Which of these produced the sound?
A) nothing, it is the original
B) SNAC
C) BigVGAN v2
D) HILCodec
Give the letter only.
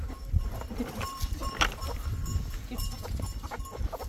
A